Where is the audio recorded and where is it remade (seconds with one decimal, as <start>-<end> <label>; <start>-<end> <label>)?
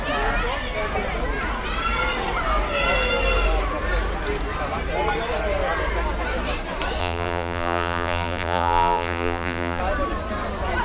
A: 0.0-7.0 recorded; 7.0-9.8 remade; 9.8-10.8 recorded